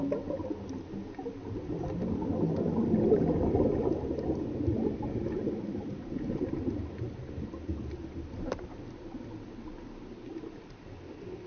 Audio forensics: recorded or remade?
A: recorded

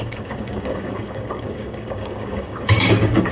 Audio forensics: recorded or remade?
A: remade